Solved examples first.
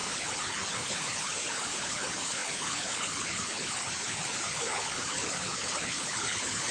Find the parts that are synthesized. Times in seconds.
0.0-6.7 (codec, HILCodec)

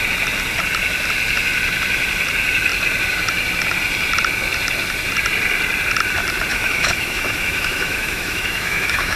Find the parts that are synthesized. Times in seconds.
6.5-9.2 (autoencoder, DAC-VAE)

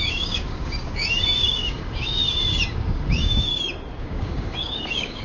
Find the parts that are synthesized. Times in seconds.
0.0-2.2 (codec, DAC); 2.7-3.5; 4.0-5.2

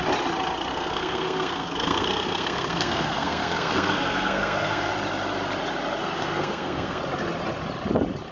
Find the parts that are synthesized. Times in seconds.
0.7-4.9 (codec, SNAC); 6.0-7.0

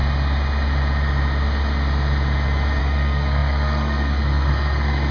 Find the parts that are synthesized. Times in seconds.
2.8-5.1 (codec, SNAC)

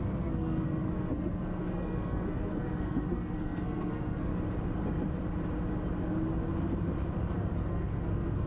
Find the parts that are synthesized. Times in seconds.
0.0-4.3 (codec, SNAC); 7.7-8.5

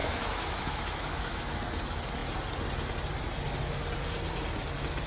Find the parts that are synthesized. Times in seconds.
0.0-1.5 (autoencoder, DAC-VAE)